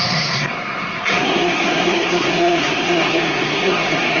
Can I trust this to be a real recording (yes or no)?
no